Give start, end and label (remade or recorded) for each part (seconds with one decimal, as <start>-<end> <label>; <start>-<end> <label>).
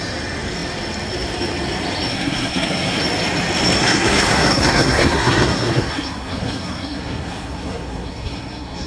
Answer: 0.0-2.1 recorded; 2.1-3.0 remade; 3.0-3.8 recorded; 3.8-8.9 remade